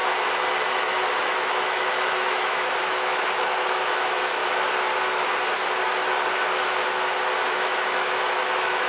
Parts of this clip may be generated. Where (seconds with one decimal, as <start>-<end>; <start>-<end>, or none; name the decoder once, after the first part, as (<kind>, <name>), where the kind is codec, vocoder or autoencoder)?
0.7-4.4 (autoencoder, DAC-VAE); 7.4-8.9